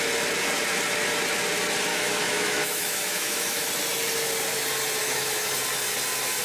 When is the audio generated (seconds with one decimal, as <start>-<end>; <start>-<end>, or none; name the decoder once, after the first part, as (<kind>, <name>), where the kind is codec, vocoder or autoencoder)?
1.9-3.7 (autoencoder, DAC-VAE); 5.0-5.5